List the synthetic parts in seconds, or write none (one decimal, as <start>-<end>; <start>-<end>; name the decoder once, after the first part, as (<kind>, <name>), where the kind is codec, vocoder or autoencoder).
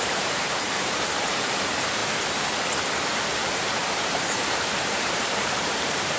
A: 0.0-2.0 (vocoder, BigVGAN v2); 3.5-6.2